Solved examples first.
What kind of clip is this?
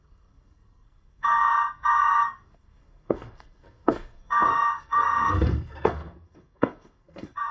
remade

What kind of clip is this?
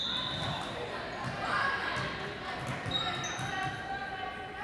recorded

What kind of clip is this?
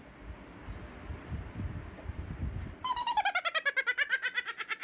recorded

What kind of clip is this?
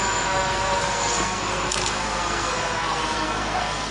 remade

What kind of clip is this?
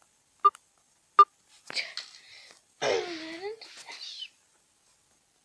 recorded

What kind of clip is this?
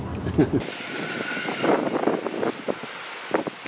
recorded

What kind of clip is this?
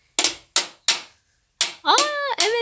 recorded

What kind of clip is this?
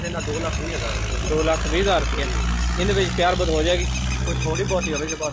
recorded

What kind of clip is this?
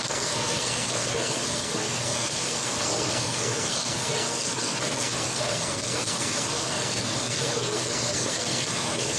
remade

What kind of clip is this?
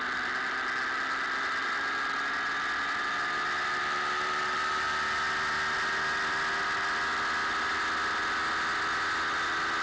recorded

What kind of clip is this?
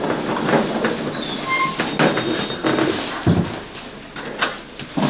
recorded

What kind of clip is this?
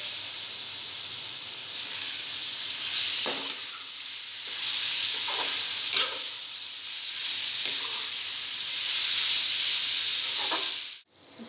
recorded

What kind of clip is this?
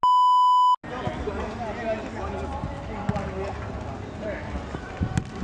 recorded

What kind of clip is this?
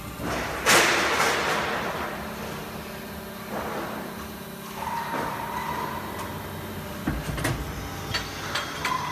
recorded